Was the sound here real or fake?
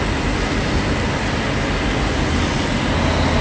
real